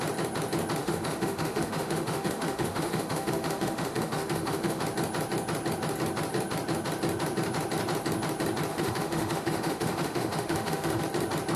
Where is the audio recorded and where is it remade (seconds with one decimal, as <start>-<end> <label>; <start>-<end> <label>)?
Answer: 0.0-0.8 recorded; 0.8-4.8 remade; 4.8-8.7 recorded; 8.7-11.0 remade; 11.0-11.6 recorded